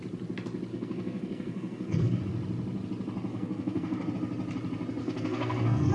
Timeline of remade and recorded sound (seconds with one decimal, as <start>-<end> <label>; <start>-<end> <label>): 0.0-0.7 recorded; 0.7-2.2 remade; 2.2-3.3 recorded; 3.3-4.1 remade; 4.1-5.0 recorded; 5.0-5.9 remade